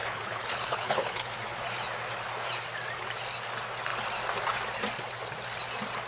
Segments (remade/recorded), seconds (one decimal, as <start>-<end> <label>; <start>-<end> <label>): 0.0-1.3 remade; 1.3-6.1 recorded